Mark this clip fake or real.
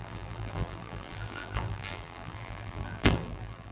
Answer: fake